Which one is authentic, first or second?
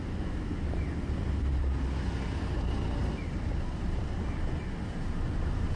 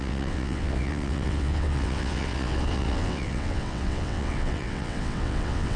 first